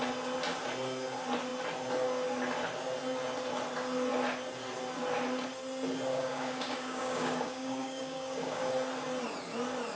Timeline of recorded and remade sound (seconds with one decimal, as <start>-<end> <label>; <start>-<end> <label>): 0.0-6.1 recorded; 6.1-8.7 remade; 8.7-10.0 recorded